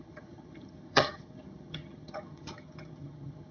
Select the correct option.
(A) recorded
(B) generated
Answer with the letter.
B